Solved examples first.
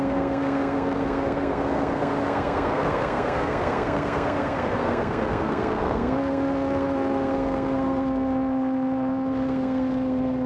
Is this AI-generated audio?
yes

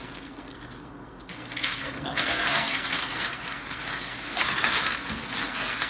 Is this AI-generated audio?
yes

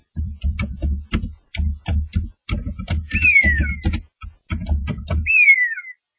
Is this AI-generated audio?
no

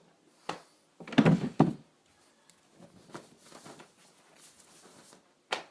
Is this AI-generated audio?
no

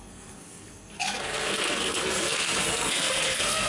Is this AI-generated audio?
yes